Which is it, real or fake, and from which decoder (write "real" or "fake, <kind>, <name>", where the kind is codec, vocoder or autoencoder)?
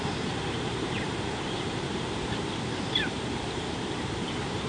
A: fake, vocoder, BigVGAN v2